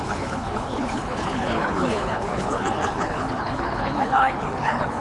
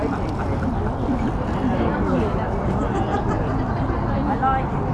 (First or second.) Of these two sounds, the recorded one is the second